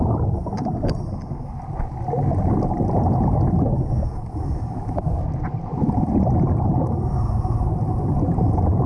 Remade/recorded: recorded